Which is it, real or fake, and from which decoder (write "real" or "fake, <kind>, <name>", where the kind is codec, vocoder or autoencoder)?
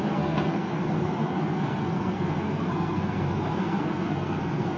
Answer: fake, codec, SNAC